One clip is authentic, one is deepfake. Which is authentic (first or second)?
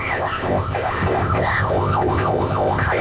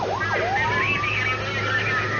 second